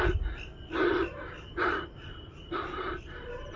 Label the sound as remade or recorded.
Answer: recorded